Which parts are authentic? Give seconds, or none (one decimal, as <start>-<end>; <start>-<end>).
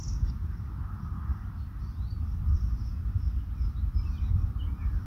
0.0-5.1